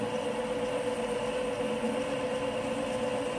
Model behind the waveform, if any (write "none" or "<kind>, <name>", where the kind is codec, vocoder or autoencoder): none